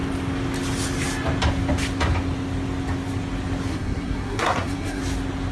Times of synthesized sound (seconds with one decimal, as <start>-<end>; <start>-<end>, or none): 3.7-5.0